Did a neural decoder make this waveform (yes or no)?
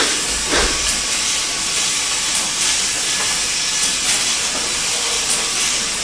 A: no